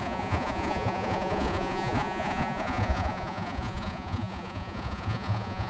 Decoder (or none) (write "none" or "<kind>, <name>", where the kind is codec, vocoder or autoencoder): vocoder, Vocos